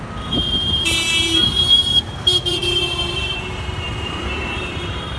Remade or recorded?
remade